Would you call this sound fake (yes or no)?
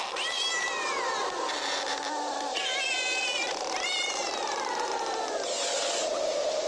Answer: yes